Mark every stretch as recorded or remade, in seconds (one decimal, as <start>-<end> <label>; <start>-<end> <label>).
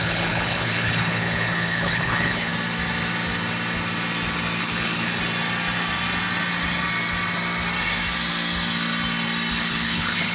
0.0-2.5 remade; 2.5-4.6 recorded; 4.6-5.2 remade; 5.2-9.5 recorded; 9.5-10.3 remade